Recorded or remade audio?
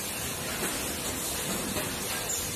recorded